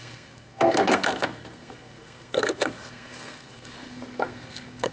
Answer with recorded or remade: remade